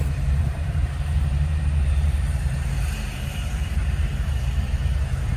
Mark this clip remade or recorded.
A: remade